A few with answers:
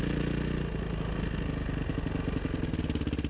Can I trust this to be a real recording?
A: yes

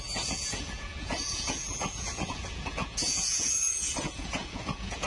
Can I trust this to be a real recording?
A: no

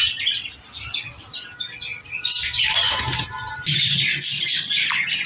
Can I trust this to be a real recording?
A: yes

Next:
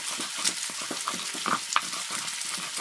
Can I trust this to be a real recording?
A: yes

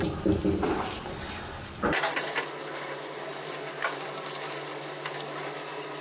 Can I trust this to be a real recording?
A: yes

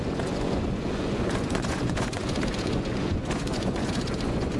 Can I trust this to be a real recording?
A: no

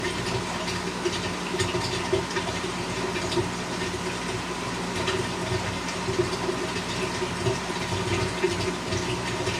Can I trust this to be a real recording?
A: yes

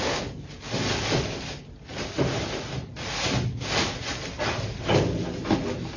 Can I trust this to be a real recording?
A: yes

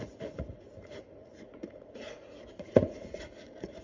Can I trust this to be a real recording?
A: no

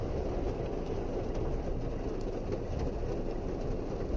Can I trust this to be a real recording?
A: yes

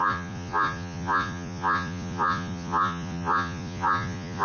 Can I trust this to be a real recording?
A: no